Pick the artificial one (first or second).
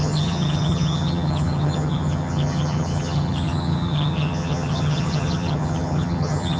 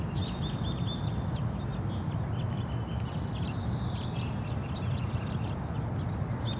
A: first